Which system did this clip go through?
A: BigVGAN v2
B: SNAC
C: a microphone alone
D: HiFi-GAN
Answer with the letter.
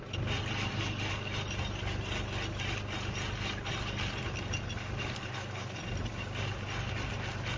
C